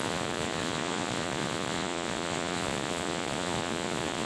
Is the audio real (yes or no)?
no